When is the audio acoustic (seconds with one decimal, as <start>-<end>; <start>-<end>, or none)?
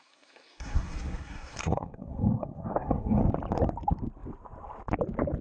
3.2-5.4